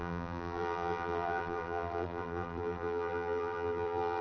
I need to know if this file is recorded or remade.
remade